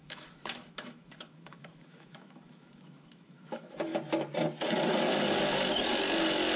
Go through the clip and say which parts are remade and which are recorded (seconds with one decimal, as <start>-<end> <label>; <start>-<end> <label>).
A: 0.0-3.9 remade; 3.9-6.6 recorded